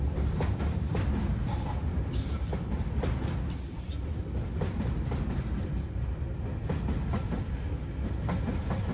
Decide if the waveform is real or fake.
real